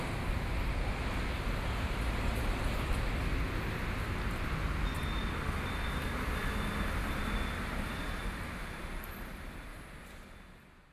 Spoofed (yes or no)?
no